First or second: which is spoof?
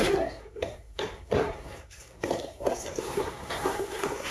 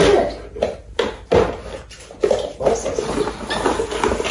first